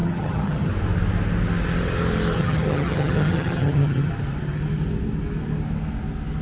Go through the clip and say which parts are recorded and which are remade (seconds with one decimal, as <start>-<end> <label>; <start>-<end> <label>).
0.0-0.7 remade; 0.7-2.4 recorded; 2.4-4.1 remade; 4.1-6.4 recorded